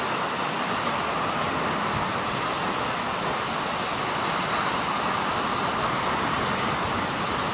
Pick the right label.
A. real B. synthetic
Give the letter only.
A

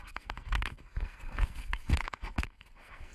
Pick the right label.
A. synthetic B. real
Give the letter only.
A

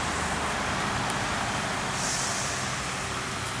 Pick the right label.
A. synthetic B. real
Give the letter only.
B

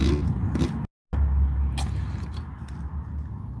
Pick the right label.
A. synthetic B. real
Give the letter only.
B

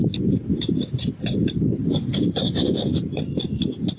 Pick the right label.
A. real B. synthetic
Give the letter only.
A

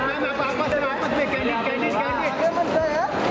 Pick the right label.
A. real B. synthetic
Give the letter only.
A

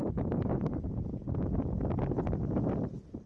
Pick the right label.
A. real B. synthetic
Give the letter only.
A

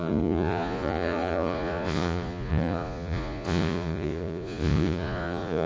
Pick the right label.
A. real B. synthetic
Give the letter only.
B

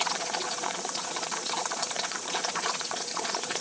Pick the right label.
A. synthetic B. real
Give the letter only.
A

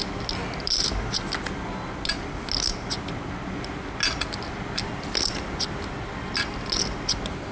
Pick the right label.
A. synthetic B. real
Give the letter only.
B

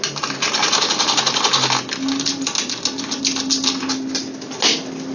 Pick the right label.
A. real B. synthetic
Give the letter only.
A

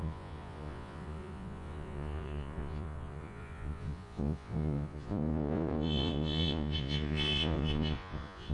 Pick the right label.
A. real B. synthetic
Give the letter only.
B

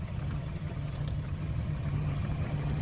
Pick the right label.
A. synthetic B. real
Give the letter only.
A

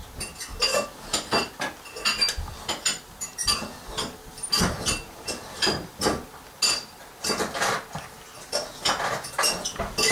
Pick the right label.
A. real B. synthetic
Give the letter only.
A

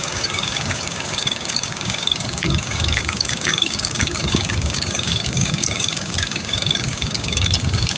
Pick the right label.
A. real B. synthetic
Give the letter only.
B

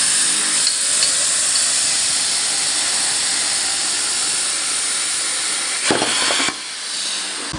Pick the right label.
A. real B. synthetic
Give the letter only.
A